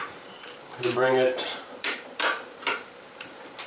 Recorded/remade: remade